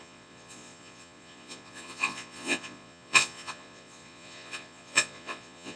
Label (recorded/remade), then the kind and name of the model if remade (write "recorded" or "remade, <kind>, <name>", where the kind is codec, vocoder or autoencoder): remade, vocoder, Vocos